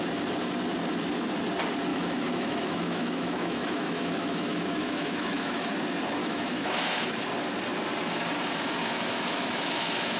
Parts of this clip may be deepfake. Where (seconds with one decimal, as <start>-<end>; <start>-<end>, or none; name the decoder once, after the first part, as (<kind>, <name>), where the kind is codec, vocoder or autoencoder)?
1.9-5.7 (autoencoder, DAC-VAE); 6.2-7.0; 8.8-10.2